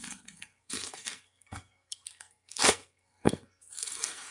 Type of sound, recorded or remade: remade